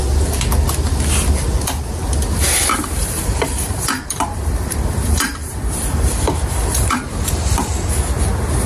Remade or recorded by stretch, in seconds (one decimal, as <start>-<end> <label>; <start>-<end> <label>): 0.0-3.0 recorded; 3.0-7.7 remade; 7.7-8.7 recorded